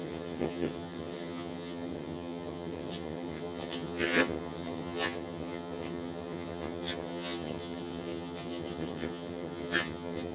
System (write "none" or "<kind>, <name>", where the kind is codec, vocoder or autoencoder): vocoder, HiFi-GAN